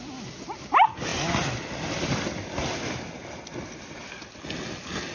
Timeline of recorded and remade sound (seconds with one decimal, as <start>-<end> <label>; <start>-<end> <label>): 0.0-5.1 recorded

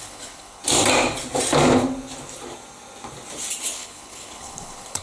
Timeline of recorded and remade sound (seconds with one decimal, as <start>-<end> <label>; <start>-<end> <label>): 0.0-0.6 remade; 0.6-3.6 recorded; 3.6-5.0 remade

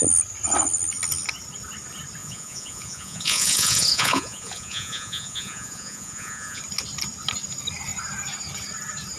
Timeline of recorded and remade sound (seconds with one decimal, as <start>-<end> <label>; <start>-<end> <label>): 0.0-2.2 recorded; 2.2-6.6 remade; 6.6-9.2 recorded

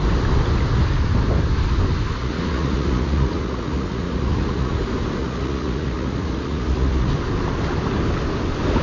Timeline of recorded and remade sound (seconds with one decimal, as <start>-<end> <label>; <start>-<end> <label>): 0.0-2.2 recorded; 2.2-4.8 remade; 4.8-5.2 recorded; 5.2-7.1 remade; 7.1-8.8 recorded

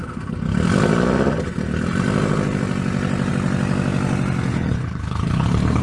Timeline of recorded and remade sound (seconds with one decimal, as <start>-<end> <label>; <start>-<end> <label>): 0.0-4.5 recorded; 4.5-5.8 remade

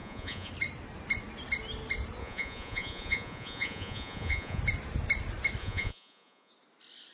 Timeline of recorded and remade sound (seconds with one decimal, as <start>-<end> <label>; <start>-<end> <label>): 0.0-0.5 remade; 0.5-2.2 recorded; 2.2-4.6 remade; 4.6-5.6 recorded; 5.6-6.5 remade; 6.5-7.1 recorded

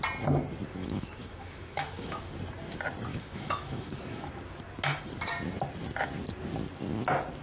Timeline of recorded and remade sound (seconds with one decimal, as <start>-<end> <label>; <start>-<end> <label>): 0.0-0.8 recorded; 0.8-2.3 remade; 2.3-3.1 recorded; 3.1-4.3 remade; 4.3-7.4 recorded

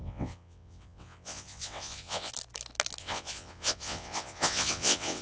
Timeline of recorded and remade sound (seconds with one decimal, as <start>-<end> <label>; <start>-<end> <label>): 0.0-2.3 remade; 2.3-3.0 recorded; 3.0-5.2 remade